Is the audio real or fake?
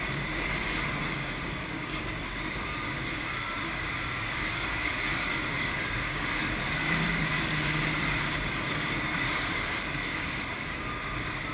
fake